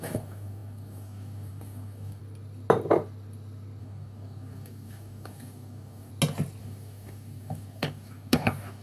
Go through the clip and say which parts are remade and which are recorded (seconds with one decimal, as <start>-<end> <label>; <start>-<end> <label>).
0.0-2.2 remade; 2.2-3.8 recorded; 3.8-6.1 remade; 6.1-6.6 recorded; 6.6-8.8 remade